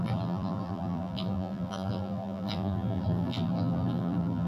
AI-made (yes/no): yes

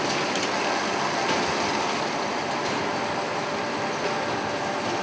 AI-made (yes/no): no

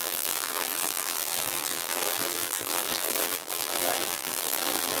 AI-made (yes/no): yes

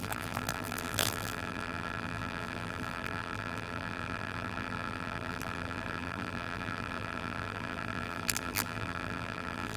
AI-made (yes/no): yes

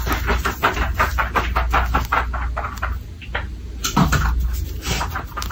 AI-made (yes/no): no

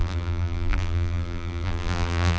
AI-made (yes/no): yes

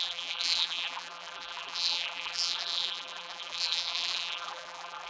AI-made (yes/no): yes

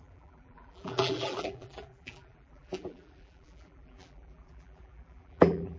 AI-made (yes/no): yes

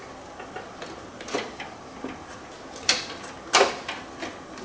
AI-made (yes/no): no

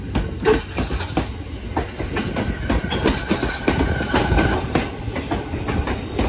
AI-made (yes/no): no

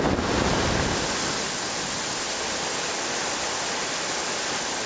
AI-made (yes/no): no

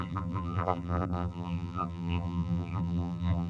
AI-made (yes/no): yes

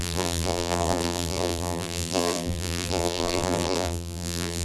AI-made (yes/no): yes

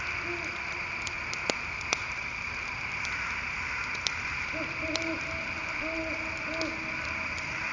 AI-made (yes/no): no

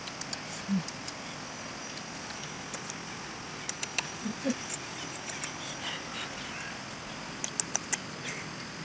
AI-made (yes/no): no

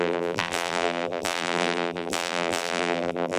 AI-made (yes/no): yes